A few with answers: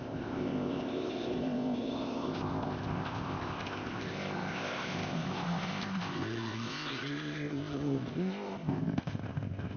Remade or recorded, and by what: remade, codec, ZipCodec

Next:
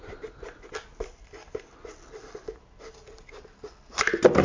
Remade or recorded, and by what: recorded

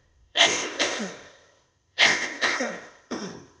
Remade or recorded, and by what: remade, codec, ZipCodec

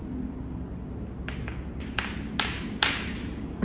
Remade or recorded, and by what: recorded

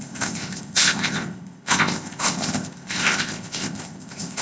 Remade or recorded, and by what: remade, codec, ZipCodec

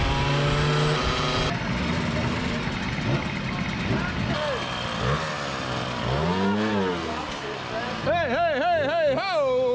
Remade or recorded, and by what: recorded